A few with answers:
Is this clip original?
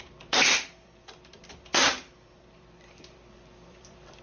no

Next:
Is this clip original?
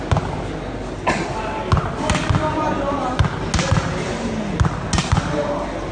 yes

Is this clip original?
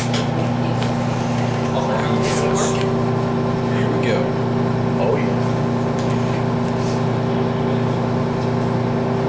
yes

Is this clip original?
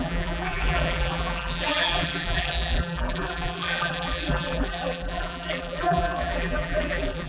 no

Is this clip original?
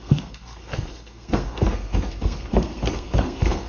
no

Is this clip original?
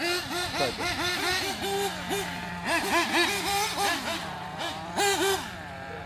yes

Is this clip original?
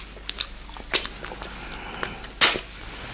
yes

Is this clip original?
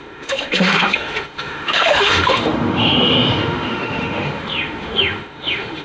no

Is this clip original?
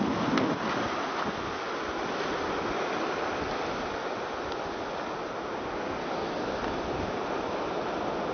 yes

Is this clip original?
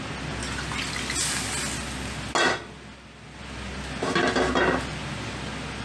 yes